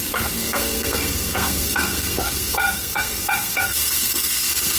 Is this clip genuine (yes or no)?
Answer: no